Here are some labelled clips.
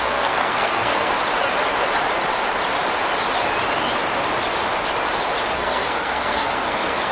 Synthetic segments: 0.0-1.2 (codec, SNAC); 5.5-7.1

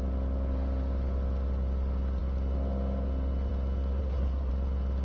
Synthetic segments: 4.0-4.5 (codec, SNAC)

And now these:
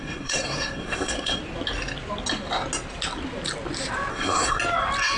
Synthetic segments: 0.0-1.4 (codec, SNAC); 4.1-4.6

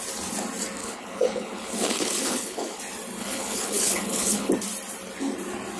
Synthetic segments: 0.8-2.8 (codec, HILCodec); 3.2-4.5

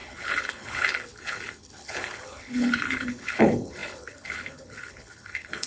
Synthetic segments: 0.0-5.7 (codec, HILCodec)